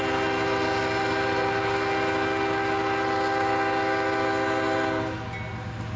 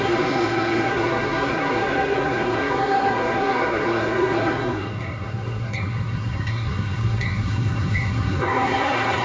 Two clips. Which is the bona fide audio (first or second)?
first